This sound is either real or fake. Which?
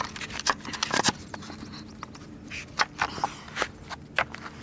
real